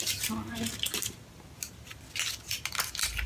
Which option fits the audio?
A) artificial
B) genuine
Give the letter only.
B